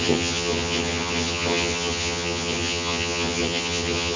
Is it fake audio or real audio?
fake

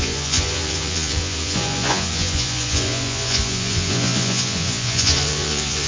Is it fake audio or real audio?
fake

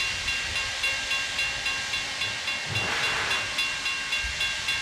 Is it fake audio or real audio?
real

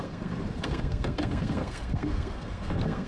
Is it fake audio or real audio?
fake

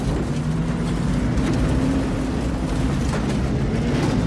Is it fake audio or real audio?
real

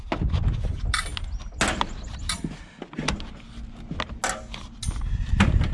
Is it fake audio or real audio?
real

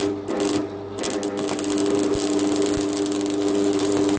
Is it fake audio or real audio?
real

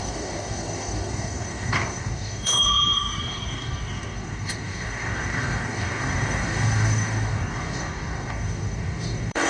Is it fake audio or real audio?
fake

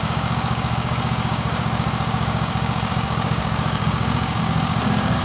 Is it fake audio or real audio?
fake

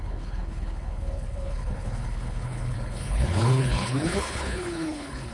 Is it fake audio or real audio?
fake